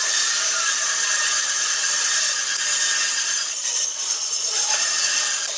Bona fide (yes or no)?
no